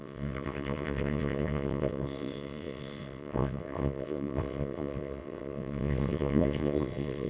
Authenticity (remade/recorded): remade